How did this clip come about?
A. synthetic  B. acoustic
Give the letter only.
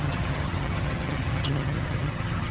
A